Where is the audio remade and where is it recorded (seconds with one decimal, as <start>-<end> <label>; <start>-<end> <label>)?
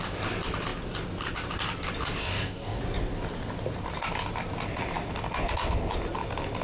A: 0.0-2.2 recorded; 2.2-2.8 remade; 2.8-6.6 recorded